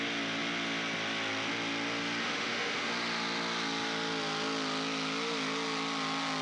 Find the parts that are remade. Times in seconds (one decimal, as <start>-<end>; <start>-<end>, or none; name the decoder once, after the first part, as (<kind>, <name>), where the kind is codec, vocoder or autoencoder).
2.2-2.9 (autoencoder, DAC-VAE)